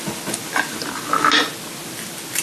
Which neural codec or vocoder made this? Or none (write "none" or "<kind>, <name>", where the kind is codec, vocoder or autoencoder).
none